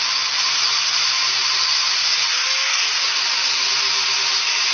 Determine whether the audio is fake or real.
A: real